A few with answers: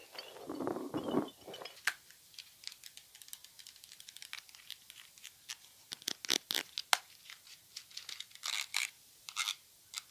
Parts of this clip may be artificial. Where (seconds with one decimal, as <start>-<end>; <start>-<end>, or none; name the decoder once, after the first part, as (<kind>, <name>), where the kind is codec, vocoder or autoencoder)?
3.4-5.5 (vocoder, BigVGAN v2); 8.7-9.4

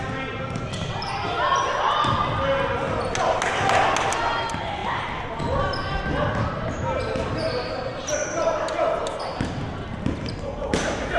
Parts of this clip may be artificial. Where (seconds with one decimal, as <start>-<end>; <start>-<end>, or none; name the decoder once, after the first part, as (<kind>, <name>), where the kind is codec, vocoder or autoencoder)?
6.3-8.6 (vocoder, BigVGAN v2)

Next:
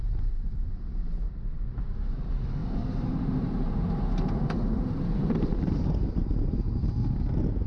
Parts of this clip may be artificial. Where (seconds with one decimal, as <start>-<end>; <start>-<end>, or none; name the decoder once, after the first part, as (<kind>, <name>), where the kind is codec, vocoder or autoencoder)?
2.6-7.2 (vocoder, BigVGAN v2)

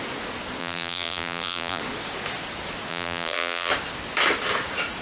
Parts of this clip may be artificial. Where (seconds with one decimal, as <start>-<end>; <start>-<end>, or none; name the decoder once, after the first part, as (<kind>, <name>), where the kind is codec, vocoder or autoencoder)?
0.6-1.8 (vocoder, BigVGAN v2); 2.9-3.7